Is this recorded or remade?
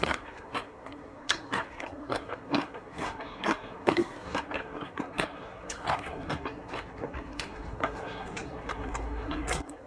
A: remade